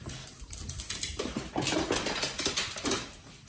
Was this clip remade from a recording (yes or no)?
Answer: no